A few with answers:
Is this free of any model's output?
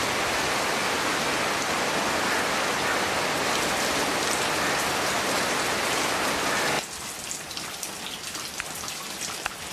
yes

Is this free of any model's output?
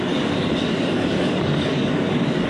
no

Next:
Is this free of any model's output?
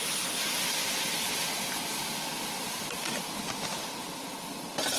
yes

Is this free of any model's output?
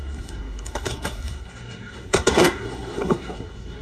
no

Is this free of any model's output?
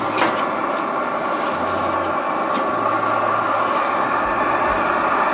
yes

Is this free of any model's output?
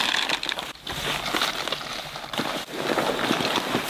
yes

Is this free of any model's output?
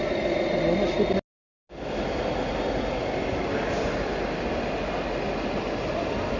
yes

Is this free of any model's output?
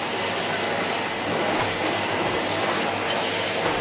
no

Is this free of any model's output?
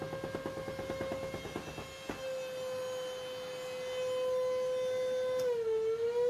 yes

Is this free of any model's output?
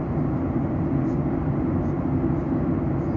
yes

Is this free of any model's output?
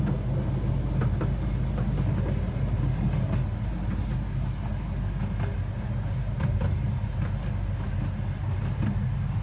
yes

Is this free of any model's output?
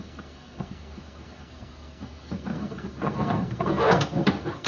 no